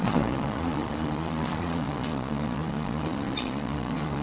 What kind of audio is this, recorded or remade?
remade